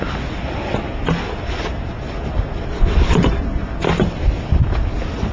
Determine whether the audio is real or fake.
real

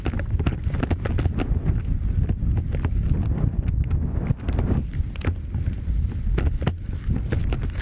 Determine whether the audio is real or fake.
real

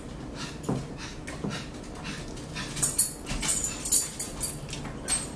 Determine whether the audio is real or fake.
real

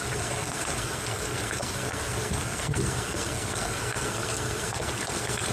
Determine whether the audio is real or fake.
fake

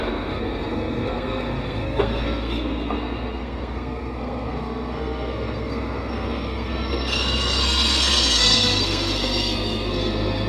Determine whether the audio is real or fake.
fake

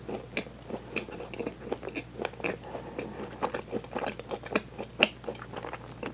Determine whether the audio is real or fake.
real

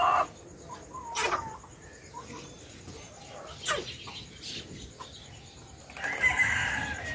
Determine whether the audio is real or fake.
real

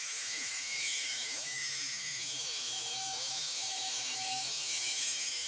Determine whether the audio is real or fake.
fake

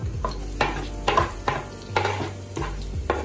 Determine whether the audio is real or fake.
real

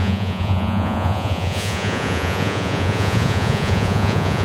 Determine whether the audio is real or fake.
fake